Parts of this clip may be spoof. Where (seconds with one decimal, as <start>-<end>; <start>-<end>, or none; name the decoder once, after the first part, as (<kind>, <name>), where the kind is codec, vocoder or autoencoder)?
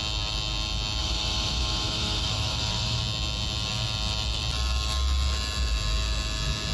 1.0-3.0 (autoencoder, DAC-VAE)